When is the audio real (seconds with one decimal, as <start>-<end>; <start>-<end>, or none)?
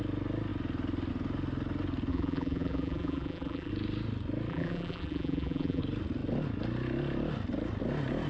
0.0-2.1; 3.7-4.5; 5.8-8.3